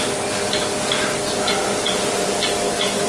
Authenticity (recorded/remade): recorded